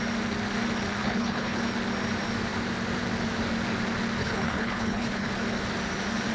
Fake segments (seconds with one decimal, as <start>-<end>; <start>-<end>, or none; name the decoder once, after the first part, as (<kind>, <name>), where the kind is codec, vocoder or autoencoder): 1.0-1.6 (codec, HILCodec); 4.2-5.3